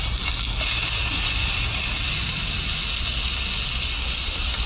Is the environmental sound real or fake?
real